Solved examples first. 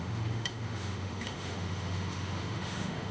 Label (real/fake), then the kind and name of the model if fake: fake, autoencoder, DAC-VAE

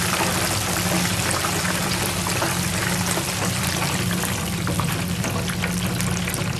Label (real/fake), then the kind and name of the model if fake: real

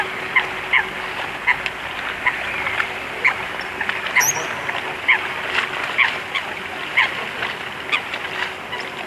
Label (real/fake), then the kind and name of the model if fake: real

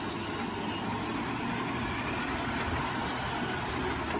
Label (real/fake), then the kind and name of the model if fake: real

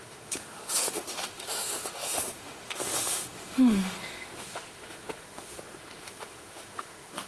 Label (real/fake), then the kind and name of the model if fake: fake, autoencoder, DAC-VAE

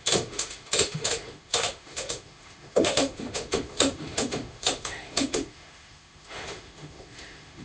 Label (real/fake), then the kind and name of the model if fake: fake, autoencoder, DAC-VAE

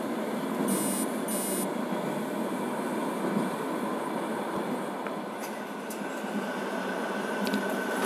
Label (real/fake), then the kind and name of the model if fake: real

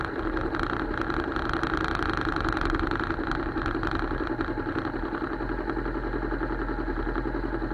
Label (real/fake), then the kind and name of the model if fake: real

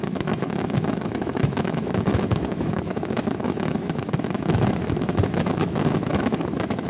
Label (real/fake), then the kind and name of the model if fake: fake, autoencoder, DAC-VAE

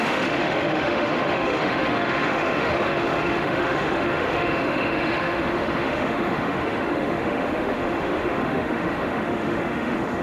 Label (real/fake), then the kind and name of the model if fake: fake, autoencoder, DAC-VAE